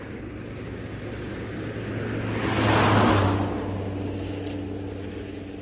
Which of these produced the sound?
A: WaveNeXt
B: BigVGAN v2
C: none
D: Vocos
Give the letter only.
C